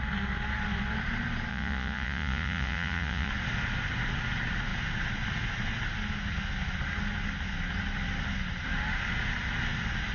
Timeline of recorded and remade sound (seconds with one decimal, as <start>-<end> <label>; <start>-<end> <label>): 0.0-1.5 recorded; 1.5-3.3 remade; 3.3-10.1 recorded